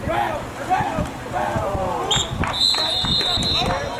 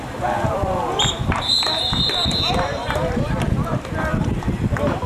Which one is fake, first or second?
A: second